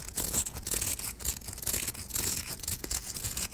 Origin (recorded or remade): remade